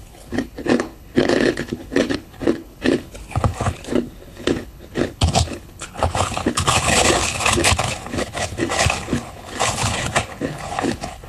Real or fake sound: fake